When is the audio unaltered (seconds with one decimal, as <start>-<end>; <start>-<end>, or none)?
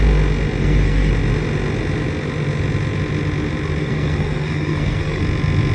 0.0-0.6; 1.1-3.8; 5.2-5.7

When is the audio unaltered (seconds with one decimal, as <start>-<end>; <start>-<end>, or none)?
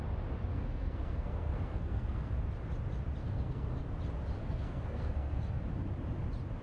0.0-0.5; 2.3-3.2; 3.8-4.4; 5.4-6.6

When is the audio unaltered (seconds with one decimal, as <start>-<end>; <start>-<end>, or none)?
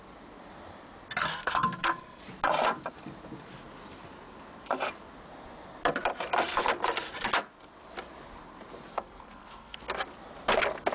0.0-1.3; 2.2-8.9; 9.8-10.9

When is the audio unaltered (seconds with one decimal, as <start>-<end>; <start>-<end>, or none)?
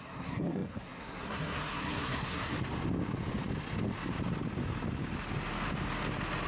2.5-6.5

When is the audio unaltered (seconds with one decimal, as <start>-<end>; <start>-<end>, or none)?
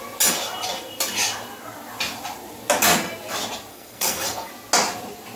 0.0-3.7; 4.5-5.4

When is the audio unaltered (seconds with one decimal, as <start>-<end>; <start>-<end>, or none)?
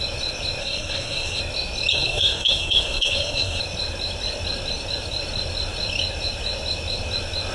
0.0-0.6; 1.4-1.9; 3.6-7.5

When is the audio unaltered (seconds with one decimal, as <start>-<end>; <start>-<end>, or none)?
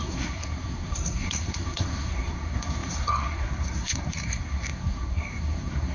none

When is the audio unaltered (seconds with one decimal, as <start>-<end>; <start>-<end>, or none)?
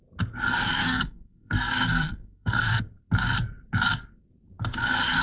0.0-0.8; 2.8-5.2